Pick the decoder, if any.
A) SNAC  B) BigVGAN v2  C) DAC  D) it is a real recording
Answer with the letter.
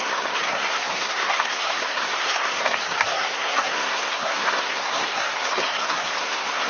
A